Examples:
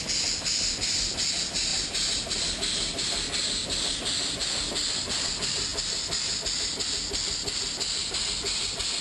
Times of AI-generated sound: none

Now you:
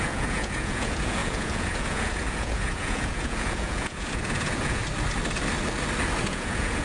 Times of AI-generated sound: 0.0-4.8; 6.2-6.8